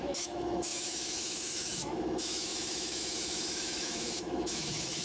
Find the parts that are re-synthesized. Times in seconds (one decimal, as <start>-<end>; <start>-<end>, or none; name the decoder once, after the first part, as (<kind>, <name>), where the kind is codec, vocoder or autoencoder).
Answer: 0.0-5.0 (autoencoder, DAC-VAE)

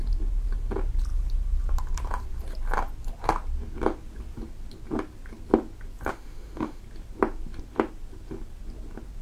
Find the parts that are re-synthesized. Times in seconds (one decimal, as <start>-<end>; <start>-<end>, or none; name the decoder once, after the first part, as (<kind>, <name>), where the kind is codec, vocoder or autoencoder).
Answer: 6.1-6.8 (autoencoder, DAC-VAE)